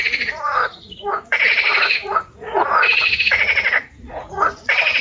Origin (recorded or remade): remade